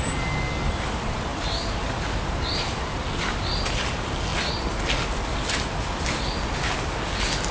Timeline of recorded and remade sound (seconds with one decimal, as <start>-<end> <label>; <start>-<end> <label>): 0.0-7.5 recorded